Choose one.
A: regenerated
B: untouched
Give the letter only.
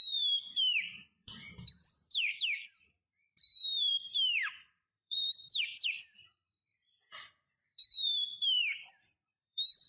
A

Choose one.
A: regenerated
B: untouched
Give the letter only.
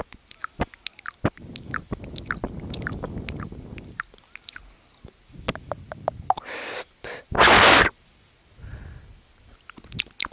B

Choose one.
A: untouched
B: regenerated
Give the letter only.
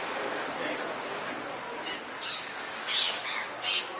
A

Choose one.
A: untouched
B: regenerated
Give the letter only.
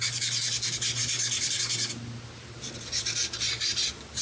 A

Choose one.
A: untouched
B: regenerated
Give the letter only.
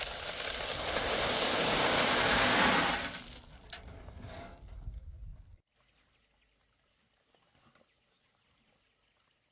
A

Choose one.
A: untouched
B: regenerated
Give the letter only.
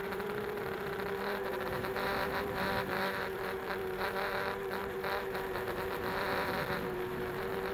B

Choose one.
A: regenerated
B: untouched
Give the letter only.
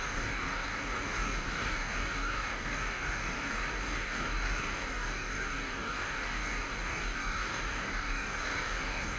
A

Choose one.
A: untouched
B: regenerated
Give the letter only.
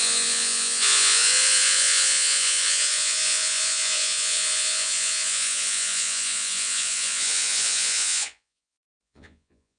B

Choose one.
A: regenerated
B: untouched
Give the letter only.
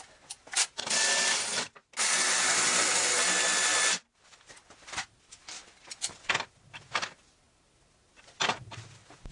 B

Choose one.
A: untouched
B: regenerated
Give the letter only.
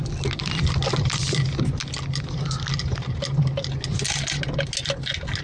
A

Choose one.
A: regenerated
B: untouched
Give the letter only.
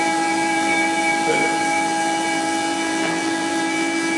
A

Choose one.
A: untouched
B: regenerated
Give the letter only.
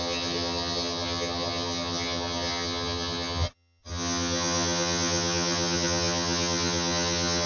B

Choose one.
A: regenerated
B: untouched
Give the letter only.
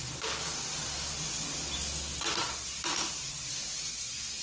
B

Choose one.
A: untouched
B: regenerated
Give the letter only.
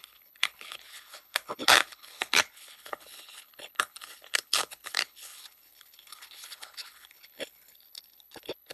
B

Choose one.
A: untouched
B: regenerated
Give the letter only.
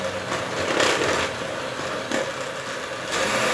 A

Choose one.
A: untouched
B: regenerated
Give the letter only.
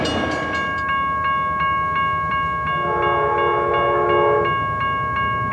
A